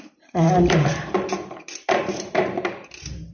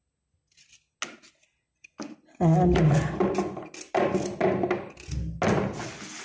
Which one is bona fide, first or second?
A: second